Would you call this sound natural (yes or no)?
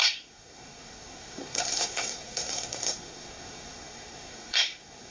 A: no